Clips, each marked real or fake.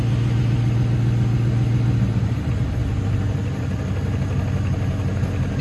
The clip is real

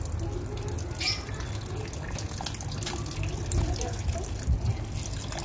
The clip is real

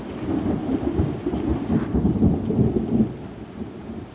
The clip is real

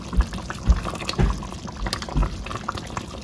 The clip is real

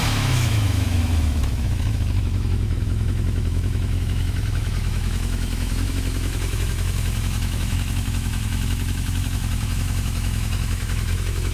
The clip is fake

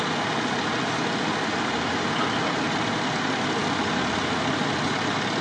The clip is real